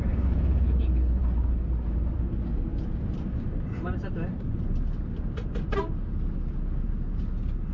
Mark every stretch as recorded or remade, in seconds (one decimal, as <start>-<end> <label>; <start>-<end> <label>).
0.0-7.7 recorded